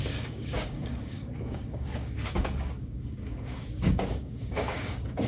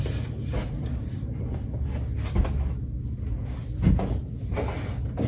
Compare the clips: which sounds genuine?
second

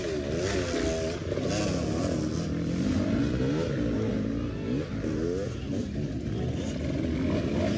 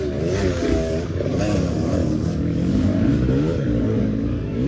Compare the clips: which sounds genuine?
first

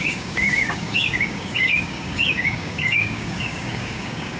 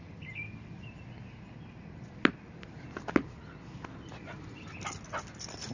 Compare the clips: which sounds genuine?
second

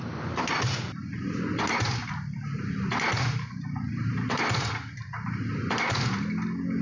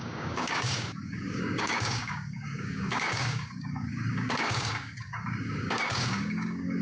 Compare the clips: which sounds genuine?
first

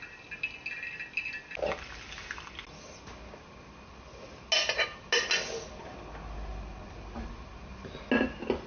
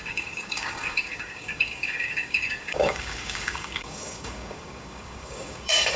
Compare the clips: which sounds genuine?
first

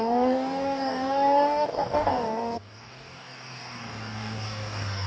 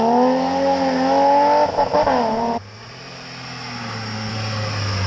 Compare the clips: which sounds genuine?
second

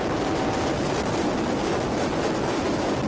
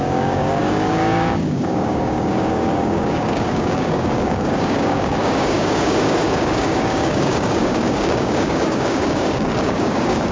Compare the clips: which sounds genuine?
first